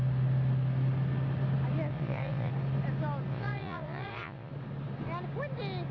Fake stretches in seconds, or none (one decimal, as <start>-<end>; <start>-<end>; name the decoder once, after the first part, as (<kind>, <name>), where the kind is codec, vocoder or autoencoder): 1.9-2.5 (vocoder, Vocos); 3.3-4.5

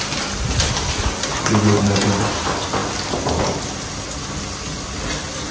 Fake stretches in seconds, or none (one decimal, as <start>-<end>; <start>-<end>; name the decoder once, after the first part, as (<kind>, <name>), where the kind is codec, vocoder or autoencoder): none